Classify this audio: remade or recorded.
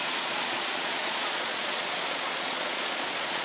remade